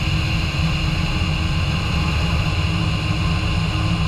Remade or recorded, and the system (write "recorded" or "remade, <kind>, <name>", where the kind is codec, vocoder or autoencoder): recorded